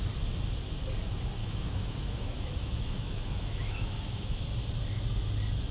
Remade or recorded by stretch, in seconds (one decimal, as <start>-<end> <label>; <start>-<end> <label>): 0.0-1.4 recorded; 1.4-4.4 remade; 4.4-5.7 recorded